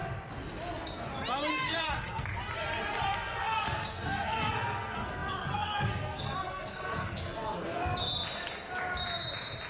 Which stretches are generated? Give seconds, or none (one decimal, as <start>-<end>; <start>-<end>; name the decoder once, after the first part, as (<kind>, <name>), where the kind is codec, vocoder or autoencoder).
1.5-2.3 (codec, SNAC); 3.1-8.0